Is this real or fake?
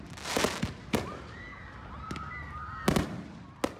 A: real